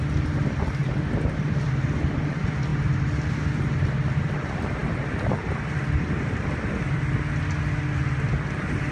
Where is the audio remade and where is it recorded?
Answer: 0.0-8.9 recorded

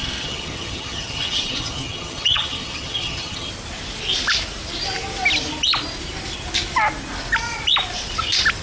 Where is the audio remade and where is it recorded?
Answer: 0.0-3.5 remade; 3.5-8.6 recorded

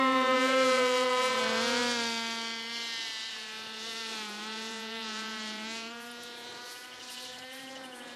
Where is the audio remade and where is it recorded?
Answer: 0.0-1.8 remade; 1.8-3.3 recorded; 3.3-8.2 remade

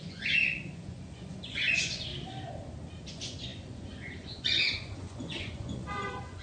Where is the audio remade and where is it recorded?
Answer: 0.0-2.1 remade; 2.1-3.1 recorded; 3.1-6.4 remade

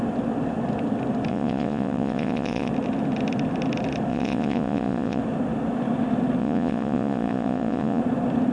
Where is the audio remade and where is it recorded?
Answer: 0.0-1.3 recorded; 1.3-2.7 remade; 2.7-4.1 recorded; 4.1-5.2 remade; 5.2-6.4 recorded; 6.4-8.0 remade; 8.0-8.5 recorded

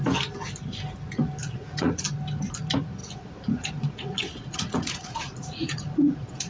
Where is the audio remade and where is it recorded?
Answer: 0.0-1.4 recorded; 1.4-2.0 remade; 2.0-3.0 recorded; 3.0-6.5 remade

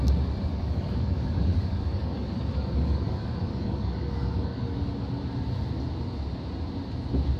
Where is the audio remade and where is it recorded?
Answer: 0.0-0.5 recorded; 0.5-4.9 remade; 4.9-7.4 recorded

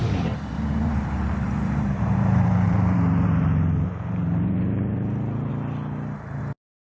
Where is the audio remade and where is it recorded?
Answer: 0.0-5.5 remade; 5.5-6.4 recorded; 6.4-6.9 remade